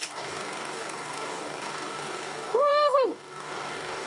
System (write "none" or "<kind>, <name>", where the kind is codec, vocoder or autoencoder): codec, DAC